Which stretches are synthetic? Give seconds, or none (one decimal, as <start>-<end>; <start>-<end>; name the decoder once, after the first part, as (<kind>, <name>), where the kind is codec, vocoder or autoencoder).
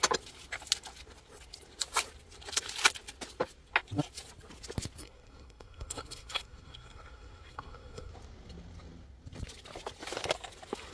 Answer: 5.0-8.1 (codec, SNAC)